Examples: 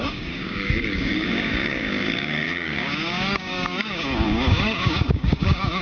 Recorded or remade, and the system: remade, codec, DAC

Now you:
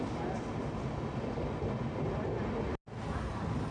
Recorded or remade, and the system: recorded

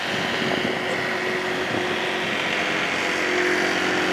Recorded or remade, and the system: recorded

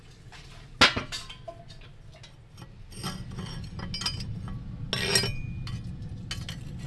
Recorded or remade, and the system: recorded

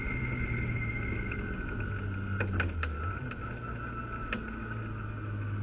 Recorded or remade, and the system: recorded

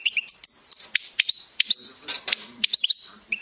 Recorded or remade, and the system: remade, vocoder, BigVGAN v2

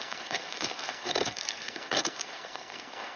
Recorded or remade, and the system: remade, codec, SNAC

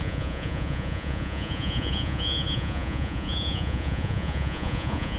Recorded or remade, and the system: remade, vocoder, Vocos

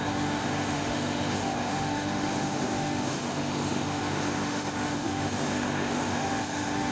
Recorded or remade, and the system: remade, autoencoder, DAC-VAE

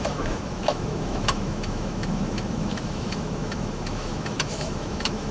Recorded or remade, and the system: remade, autoencoder, DAC-VAE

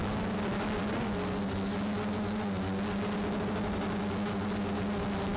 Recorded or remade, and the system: recorded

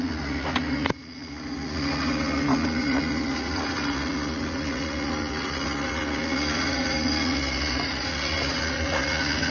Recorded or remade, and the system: remade, vocoder, Vocos